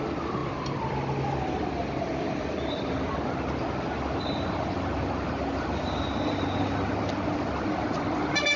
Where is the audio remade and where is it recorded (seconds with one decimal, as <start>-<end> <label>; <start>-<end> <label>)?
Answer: 0.0-0.4 recorded; 0.4-0.9 remade; 0.9-1.8 recorded; 1.8-6.0 remade; 6.0-7.9 recorded; 7.9-8.6 remade